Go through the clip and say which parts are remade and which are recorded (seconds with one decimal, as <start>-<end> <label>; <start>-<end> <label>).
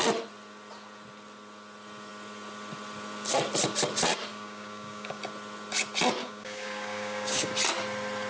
0.0-4.3 recorded; 4.3-5.2 remade; 5.2-6.2 recorded; 6.2-7.5 remade; 7.5-8.3 recorded